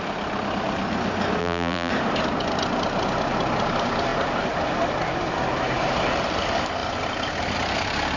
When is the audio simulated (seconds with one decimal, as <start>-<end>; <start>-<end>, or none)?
1.4-1.9